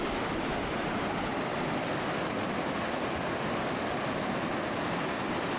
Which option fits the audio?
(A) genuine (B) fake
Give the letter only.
A